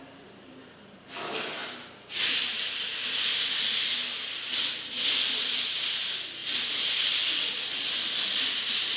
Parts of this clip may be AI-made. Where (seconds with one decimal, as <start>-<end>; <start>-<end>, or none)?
none